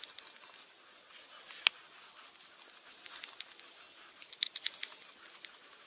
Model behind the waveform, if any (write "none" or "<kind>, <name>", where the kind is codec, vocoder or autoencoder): none